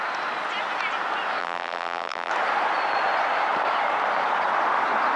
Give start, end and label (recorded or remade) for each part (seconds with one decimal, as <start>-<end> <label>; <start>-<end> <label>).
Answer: 0.0-1.4 recorded; 1.4-2.3 remade; 2.3-5.2 recorded